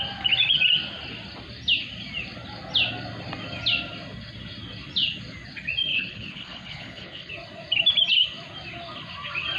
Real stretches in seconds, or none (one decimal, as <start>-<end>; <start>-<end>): 0.0-5.9; 7.3-9.6